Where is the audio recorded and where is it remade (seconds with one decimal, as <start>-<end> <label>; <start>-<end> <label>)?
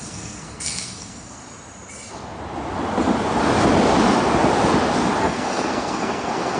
0.0-1.4 remade; 1.4-5.2 recorded; 5.2-6.6 remade